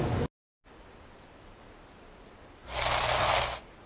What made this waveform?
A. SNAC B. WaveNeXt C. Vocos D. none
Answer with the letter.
D